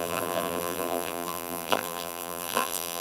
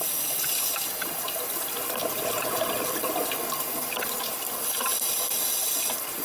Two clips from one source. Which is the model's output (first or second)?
first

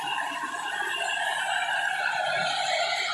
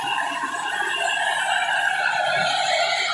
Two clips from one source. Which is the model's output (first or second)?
first